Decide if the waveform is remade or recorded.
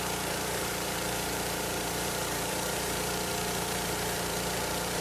remade